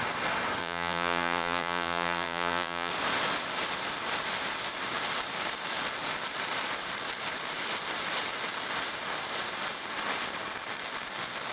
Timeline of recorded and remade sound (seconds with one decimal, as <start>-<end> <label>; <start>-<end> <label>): 0.0-0.6 recorded; 0.6-2.9 remade; 2.9-11.5 recorded